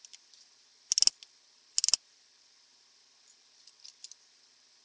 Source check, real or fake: real